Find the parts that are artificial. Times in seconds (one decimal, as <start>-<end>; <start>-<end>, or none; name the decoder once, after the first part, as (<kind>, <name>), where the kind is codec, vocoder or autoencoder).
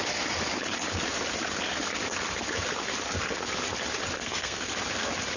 4.2-4.7 (codec, SNAC)